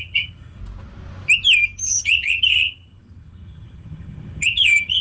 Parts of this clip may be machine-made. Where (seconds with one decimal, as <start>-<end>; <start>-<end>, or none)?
0.0-0.6; 2.0-5.0